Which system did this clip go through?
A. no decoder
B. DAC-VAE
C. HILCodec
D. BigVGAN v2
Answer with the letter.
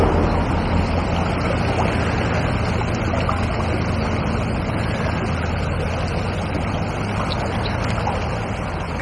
A